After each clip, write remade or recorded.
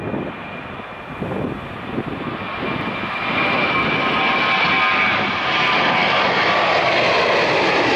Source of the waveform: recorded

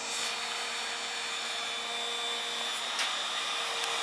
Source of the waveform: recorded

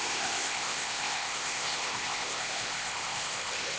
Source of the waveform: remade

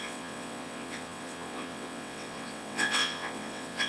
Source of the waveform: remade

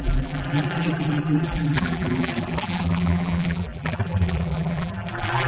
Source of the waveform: remade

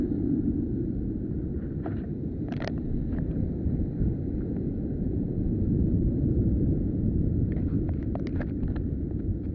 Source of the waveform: remade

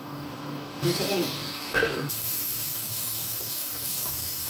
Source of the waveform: remade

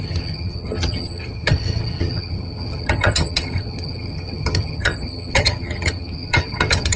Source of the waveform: remade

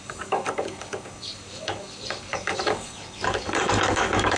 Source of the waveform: remade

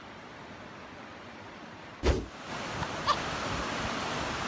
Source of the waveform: recorded